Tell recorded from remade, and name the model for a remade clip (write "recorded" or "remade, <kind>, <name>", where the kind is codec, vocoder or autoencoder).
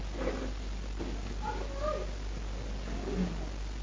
recorded